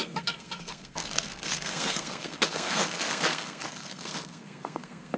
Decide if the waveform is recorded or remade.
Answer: remade